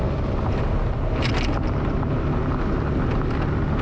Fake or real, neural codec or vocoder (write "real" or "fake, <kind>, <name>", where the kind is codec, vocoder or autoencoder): real